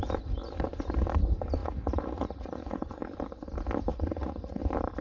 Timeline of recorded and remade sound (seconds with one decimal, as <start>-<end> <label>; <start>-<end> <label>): 0.0-1.6 recorded; 1.6-3.0 remade; 3.0-3.9 recorded; 3.9-4.6 remade; 4.6-5.0 recorded